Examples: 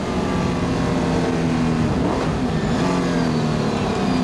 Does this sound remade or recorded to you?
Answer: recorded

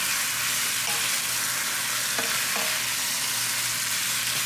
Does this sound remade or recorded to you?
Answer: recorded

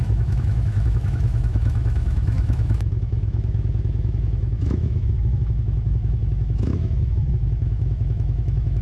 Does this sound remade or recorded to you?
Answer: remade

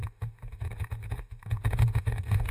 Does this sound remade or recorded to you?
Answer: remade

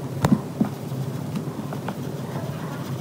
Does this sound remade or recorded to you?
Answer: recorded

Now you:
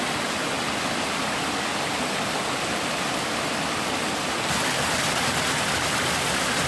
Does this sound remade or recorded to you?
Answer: recorded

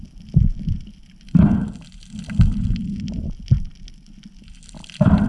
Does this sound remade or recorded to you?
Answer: recorded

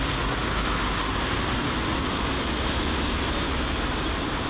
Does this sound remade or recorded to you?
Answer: recorded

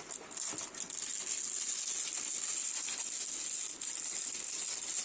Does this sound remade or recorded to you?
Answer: recorded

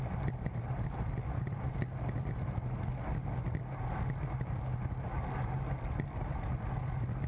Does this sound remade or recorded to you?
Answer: recorded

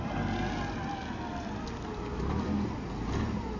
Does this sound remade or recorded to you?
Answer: recorded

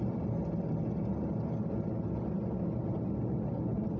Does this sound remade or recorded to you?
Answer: recorded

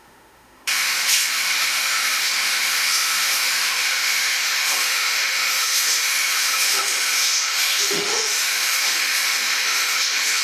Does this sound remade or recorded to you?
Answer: remade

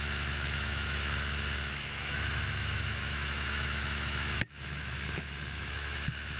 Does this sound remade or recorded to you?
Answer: remade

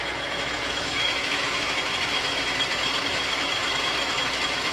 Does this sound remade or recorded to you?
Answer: remade